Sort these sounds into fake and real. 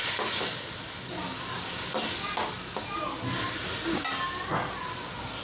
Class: real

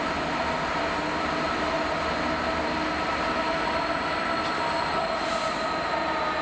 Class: real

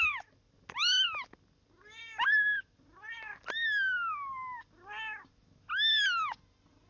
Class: real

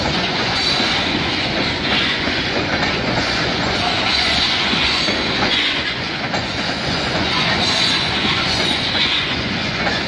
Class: fake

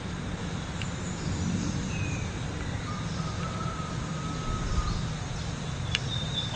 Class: real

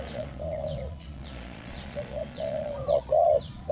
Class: fake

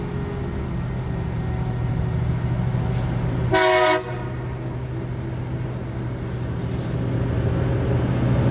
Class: real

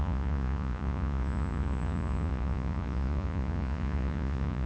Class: fake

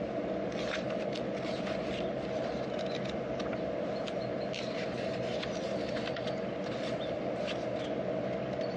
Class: real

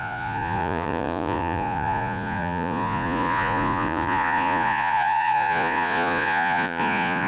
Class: fake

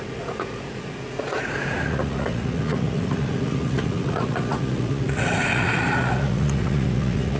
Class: fake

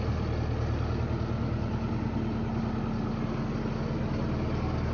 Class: real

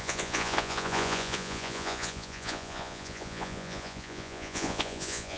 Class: fake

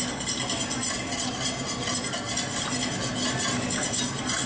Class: real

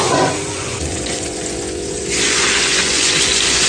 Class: fake